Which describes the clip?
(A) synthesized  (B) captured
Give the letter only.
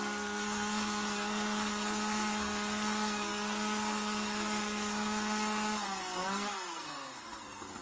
A